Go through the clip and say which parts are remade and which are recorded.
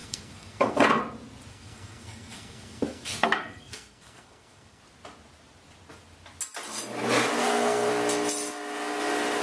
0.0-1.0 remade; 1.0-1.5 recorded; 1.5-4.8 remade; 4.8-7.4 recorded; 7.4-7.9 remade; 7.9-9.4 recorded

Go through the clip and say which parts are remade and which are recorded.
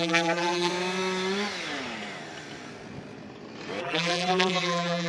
0.0-0.7 remade; 0.7-3.8 recorded; 3.8-5.1 remade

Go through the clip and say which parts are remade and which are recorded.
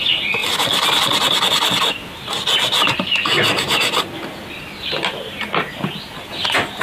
0.0-6.8 recorded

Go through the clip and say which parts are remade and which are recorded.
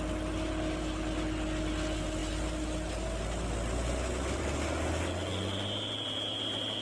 0.0-6.8 recorded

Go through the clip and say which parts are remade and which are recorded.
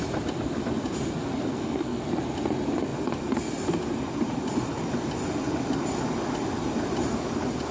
0.0-1.5 recorded; 1.5-2.0 remade; 2.0-7.7 recorded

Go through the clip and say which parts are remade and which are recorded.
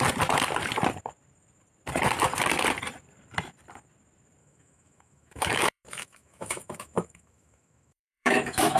0.0-4.4 recorded; 4.4-8.8 remade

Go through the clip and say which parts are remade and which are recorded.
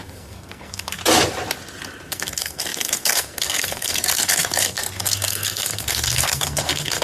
0.0-1.0 remade; 1.0-2.1 recorded; 2.1-7.0 remade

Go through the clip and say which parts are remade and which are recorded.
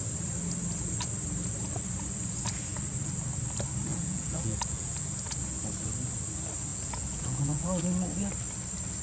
0.0-3.9 recorded; 3.9-5.0 remade; 5.0-6.7 recorded; 6.7-7.8 remade; 7.8-9.0 recorded